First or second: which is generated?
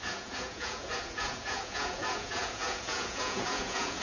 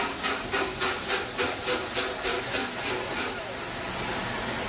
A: first